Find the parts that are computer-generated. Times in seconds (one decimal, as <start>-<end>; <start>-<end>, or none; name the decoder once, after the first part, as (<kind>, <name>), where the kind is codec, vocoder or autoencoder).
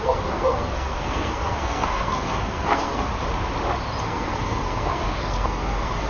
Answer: 0.0-3.1 (codec, SNAC); 4.0-6.1